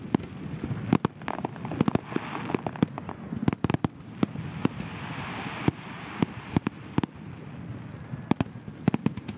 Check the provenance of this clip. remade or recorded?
recorded